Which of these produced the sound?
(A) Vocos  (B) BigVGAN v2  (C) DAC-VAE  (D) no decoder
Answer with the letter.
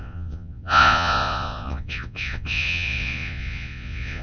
A